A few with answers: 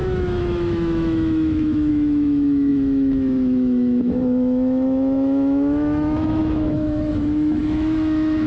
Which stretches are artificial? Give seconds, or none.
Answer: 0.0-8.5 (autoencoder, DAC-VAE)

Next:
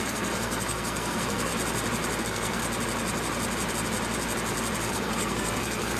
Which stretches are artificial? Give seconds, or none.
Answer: 0.0-1.5 (codec, SNAC); 2.2-2.6; 4.9-6.0

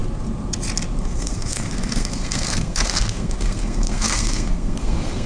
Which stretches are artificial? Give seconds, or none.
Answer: 1.0-5.3 (codec, SNAC)

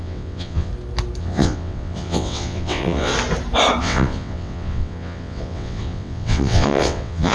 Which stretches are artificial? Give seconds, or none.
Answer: 0.0-0.7 (vocoder, WaveNeXt); 1.2-3.1; 3.8-7.3

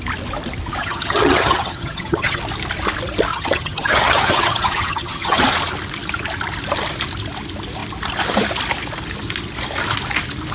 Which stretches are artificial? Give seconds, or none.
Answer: 0.8-2.4 (vocoder, HiFi-GAN); 3.3-5.4